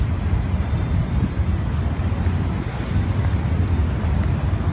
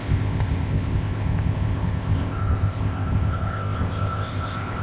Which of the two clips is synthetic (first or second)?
second